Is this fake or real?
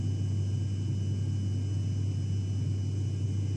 real